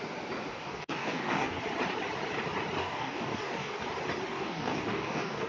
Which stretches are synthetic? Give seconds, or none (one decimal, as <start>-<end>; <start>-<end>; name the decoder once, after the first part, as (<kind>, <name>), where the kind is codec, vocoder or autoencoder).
0.5-1.6 (codec, DAC); 2.8-3.8; 4.3-5.5